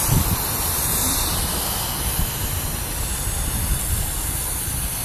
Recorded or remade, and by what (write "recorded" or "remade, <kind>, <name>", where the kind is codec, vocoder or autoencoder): recorded